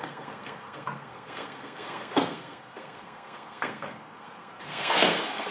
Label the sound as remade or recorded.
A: remade